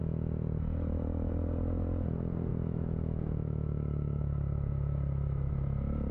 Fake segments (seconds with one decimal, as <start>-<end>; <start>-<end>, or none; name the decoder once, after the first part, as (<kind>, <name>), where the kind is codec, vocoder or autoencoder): 2.5-5.5 (autoencoder, DAC-VAE)